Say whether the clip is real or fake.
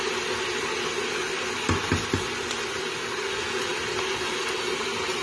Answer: real